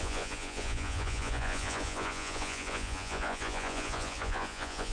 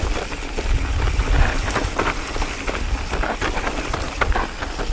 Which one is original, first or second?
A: second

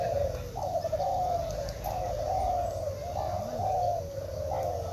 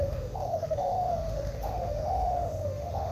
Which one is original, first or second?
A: first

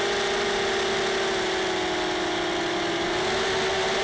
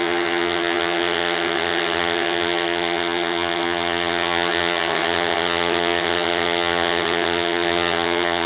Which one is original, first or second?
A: first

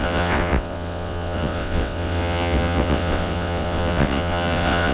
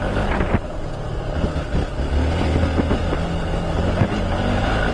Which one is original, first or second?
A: second